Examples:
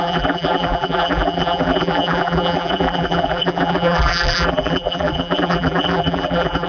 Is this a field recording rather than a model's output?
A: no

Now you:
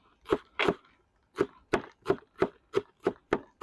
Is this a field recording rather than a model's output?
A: no